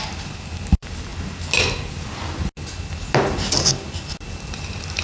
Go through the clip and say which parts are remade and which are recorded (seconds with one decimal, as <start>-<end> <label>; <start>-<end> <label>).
0.0-5.0 recorded